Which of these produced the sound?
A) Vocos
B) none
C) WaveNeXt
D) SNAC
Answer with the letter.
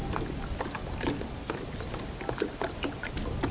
B